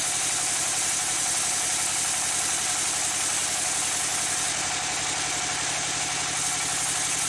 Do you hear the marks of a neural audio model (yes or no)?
no